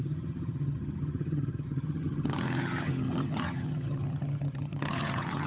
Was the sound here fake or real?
fake